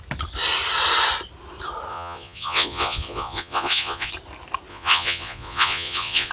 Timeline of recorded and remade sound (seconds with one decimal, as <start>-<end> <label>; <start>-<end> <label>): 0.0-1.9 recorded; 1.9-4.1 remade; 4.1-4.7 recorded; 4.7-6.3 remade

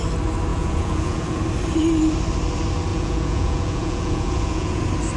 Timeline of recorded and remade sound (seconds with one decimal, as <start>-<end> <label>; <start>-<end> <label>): 0.0-0.5 recorded; 0.5-1.4 remade; 1.4-2.9 recorded; 2.9-4.8 remade; 4.8-5.2 recorded

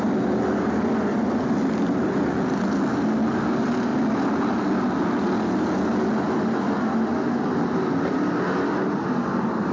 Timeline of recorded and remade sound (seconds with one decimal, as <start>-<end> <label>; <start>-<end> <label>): 0.0-9.7 recorded

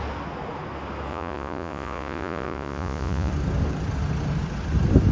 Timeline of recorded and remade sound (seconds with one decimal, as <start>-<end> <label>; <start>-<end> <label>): 0.0-1.1 recorded; 1.1-3.3 remade; 3.3-5.1 recorded

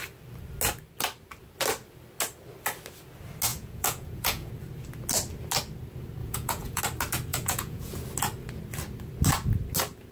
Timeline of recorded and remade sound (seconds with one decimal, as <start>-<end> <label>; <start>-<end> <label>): 0.0-3.5 recorded; 3.5-4.5 remade; 4.5-6.2 recorded; 6.2-6.8 remade; 6.8-7.3 recorded; 7.3-7.9 remade; 7.9-10.1 recorded

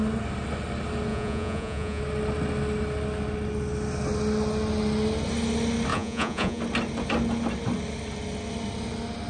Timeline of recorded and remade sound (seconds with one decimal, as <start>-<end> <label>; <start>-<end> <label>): 0.0-1.1 recorded; 1.1-2.0 remade; 2.0-5.9 recorded; 5.9-6.6 remade; 6.6-9.3 recorded